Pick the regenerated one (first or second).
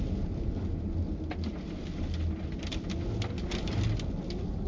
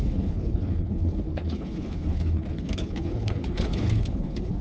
second